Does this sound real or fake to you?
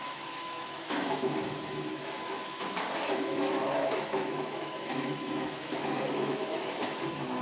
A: fake